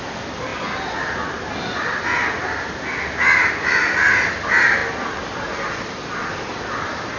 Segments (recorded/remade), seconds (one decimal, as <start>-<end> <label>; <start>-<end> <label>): 0.0-7.2 recorded

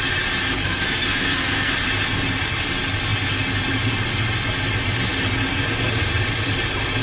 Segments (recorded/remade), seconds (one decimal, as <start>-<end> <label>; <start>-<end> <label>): 0.0-0.6 recorded; 0.6-1.7 remade; 1.7-7.0 recorded

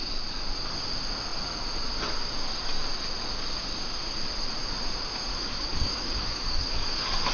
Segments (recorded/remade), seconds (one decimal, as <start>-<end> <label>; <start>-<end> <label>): 0.0-5.3 recorded; 5.3-7.3 remade

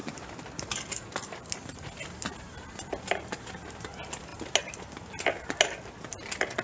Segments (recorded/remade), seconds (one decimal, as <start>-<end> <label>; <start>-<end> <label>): 0.0-6.6 recorded

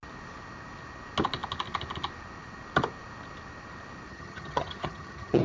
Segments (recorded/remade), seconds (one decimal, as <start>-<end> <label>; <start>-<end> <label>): 0.0-4.1 recorded; 4.1-5.4 remade